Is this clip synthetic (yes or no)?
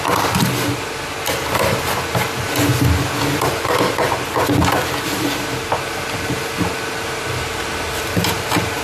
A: no